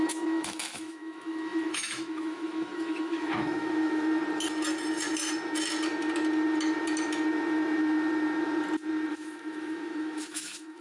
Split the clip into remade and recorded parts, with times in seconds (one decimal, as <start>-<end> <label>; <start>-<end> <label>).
0.0-4.2 remade; 4.2-9.1 recorded; 9.1-10.8 remade